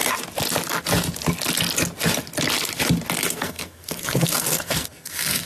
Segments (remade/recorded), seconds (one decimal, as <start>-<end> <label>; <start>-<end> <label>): 0.0-3.3 recorded; 3.3-5.5 remade